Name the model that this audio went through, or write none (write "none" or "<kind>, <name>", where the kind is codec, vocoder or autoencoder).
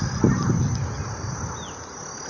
none